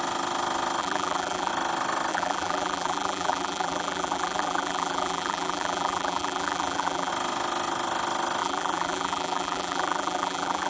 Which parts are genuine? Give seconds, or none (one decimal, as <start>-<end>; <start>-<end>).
0.0-0.8; 1.5-2.1; 7.1-8.4